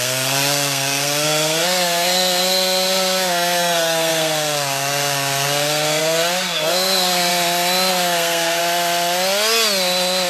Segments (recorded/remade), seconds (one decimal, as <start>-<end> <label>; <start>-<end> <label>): 0.0-7.3 remade; 7.3-7.9 recorded; 7.9-8.6 remade; 8.6-10.3 recorded